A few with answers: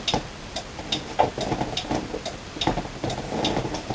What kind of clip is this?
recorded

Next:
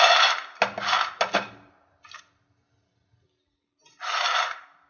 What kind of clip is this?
recorded